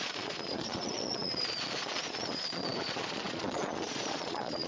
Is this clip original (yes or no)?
no